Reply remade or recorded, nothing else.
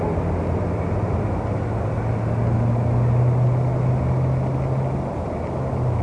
recorded